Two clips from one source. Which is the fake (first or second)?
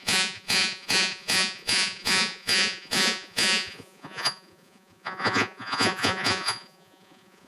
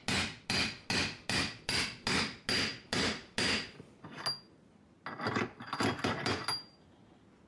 first